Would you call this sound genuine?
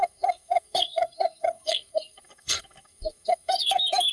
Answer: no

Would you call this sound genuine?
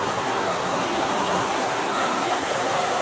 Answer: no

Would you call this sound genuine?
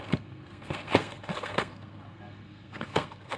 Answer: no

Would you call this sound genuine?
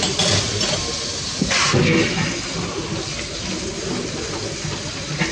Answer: yes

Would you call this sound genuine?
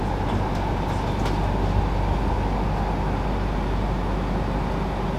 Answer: yes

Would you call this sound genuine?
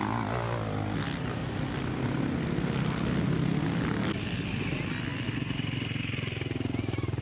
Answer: yes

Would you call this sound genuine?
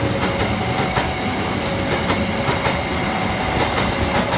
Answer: yes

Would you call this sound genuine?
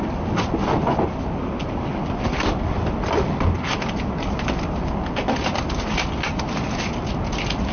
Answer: yes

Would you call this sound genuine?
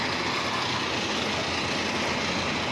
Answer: yes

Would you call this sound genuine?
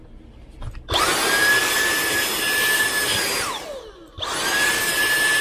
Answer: yes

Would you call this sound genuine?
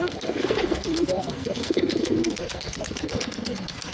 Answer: no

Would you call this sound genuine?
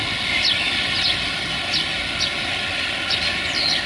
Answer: yes